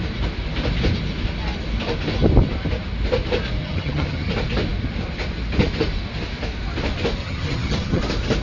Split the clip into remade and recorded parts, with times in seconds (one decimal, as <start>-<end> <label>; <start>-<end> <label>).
0.0-3.6 recorded; 3.6-4.3 remade; 4.3-7.2 recorded; 7.2-8.0 remade; 8.0-8.4 recorded